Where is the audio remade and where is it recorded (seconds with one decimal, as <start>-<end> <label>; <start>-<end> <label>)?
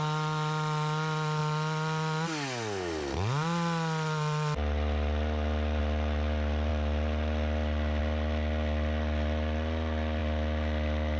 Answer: 0.0-11.2 recorded